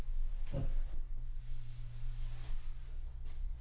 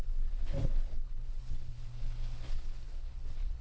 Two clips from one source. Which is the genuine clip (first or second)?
first